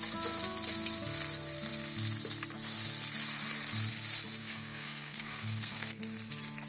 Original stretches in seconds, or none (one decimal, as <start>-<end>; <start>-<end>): 0.0-4.4; 6.0-6.7